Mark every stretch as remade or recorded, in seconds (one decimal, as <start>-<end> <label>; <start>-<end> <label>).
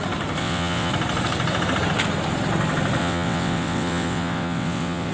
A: 0.0-0.4 recorded; 0.4-0.9 remade; 0.9-3.0 recorded; 3.0-5.1 remade